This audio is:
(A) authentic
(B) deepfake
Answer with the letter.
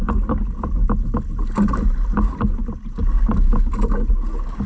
A